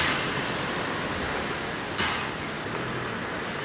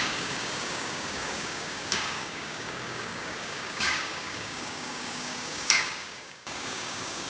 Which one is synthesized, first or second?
second